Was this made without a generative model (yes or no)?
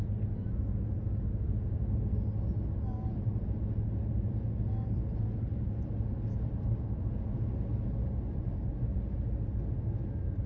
yes